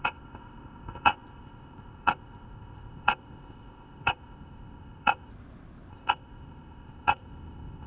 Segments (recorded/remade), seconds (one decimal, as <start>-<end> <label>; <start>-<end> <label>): 0.0-5.3 remade; 5.3-5.9 recorded; 5.9-7.9 remade